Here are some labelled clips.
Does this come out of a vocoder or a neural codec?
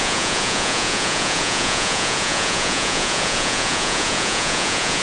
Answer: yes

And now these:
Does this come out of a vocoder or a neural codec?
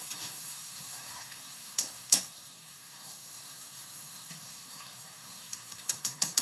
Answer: yes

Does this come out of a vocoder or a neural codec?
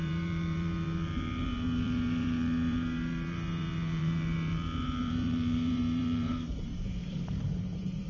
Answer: yes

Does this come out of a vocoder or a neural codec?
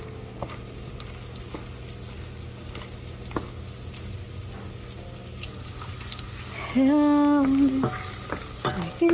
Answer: no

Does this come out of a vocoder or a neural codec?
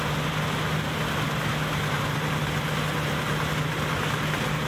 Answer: no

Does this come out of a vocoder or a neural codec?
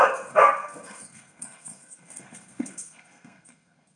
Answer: yes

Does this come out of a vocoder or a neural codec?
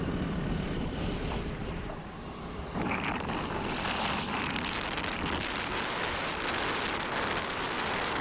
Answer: yes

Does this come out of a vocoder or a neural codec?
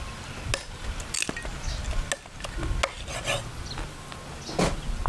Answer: no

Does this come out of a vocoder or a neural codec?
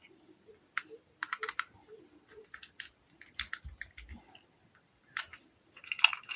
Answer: no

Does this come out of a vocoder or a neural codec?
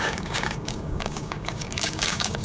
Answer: yes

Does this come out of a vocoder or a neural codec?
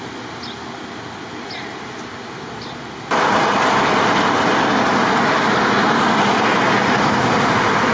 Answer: no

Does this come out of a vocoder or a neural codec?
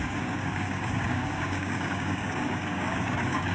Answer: yes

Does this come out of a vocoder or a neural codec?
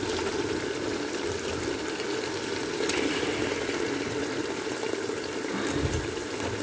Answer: no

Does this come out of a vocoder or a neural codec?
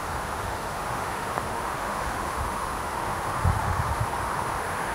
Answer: yes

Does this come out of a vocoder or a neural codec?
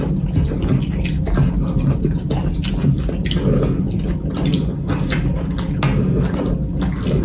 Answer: no